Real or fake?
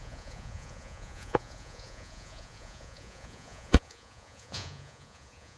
fake